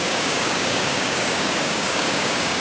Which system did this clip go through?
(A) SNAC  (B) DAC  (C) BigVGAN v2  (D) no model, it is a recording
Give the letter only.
B